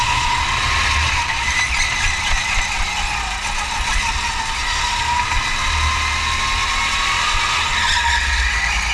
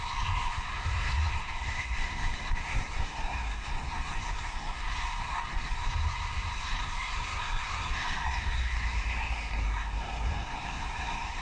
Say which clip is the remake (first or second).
second